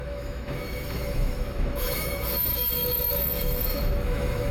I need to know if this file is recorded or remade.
remade